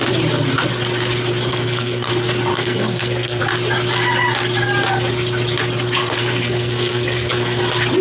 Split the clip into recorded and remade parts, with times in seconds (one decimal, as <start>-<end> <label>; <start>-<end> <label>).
0.0-1.5 recorded; 1.5-2.1 remade; 2.1-2.5 recorded; 2.5-3.4 remade; 3.4-6.0 recorded; 6.0-7.6 remade; 7.6-8.0 recorded